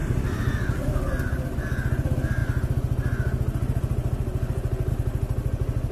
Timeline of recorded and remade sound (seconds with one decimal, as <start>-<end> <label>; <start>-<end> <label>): 0.0-0.9 remade; 0.9-5.9 recorded